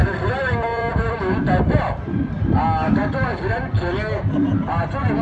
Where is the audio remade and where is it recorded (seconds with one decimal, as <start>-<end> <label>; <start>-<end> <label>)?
0.0-2.2 remade; 2.2-3.0 recorded; 3.0-3.8 remade; 3.8-5.2 recorded

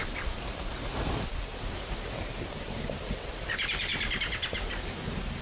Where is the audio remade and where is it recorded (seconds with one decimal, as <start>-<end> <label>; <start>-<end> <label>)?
0.0-3.9 remade; 3.9-4.7 recorded; 4.7-5.4 remade

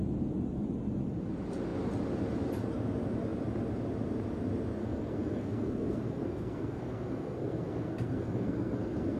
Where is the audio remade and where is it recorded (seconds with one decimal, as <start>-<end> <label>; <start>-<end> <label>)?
0.0-4.8 recorded; 4.8-9.2 remade

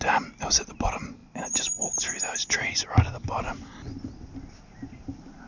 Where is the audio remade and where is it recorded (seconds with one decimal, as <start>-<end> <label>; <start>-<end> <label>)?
0.0-5.5 recorded

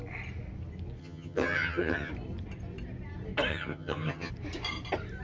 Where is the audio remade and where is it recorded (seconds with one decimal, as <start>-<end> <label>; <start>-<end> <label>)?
0.0-1.0 recorded; 1.0-2.1 remade; 2.1-3.5 recorded; 3.5-4.3 remade; 4.3-5.2 recorded

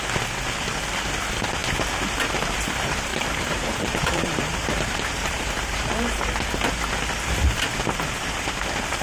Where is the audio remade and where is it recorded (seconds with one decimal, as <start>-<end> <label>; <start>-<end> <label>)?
0.0-3.1 recorded; 3.1-6.7 remade; 6.7-9.0 recorded

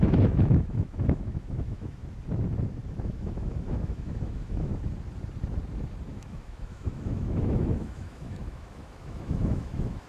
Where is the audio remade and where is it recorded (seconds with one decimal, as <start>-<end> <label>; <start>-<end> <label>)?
0.0-2.0 remade; 2.0-2.9 recorded; 2.9-4.7 remade; 4.7-6.1 recorded; 6.1-10.1 remade

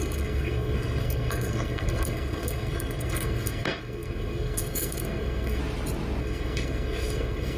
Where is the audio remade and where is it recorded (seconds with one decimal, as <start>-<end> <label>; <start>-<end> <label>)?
0.0-5.6 remade; 5.6-6.2 recorded; 6.2-7.6 remade